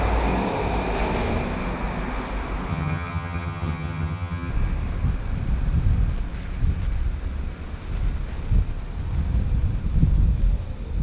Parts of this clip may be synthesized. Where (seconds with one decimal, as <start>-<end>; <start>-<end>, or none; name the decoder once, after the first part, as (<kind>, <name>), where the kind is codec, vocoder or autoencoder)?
2.7-4.5 (vocoder, HiFi-GAN)